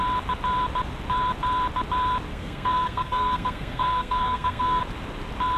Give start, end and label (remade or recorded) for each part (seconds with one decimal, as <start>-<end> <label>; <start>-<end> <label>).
0.0-2.3 recorded; 2.3-4.8 remade; 4.8-5.6 recorded

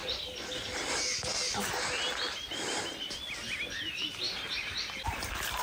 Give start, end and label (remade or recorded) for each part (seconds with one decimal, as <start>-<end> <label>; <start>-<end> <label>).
0.0-0.9 remade; 0.9-1.3 recorded; 1.3-4.7 remade; 4.7-5.6 recorded